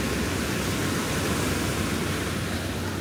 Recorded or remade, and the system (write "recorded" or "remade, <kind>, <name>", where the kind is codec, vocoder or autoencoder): recorded